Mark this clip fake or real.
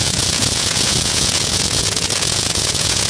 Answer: fake